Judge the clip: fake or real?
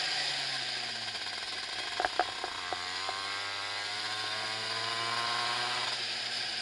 real